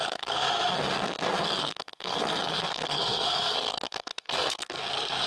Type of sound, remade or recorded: remade